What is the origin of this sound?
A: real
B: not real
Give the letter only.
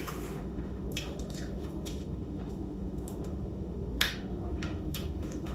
B